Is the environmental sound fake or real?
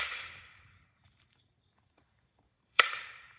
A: fake